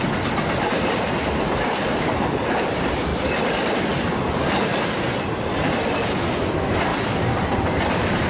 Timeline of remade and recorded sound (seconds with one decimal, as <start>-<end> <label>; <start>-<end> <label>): 0.0-0.7 recorded; 0.7-1.3 remade; 1.3-6.9 recorded; 6.9-8.3 remade